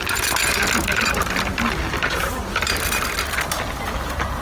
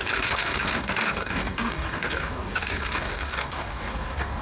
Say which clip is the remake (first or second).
second